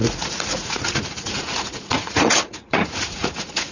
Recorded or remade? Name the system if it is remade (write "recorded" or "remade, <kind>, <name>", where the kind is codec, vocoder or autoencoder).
remade, vocoder, Vocos